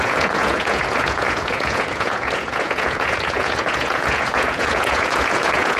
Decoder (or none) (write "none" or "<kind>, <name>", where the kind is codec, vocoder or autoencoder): vocoder, Vocos